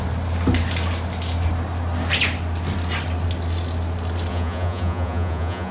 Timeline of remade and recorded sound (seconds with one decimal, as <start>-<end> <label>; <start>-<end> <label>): 0.0-4.3 recorded; 4.3-5.7 remade